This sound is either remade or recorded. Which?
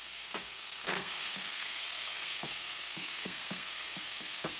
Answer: remade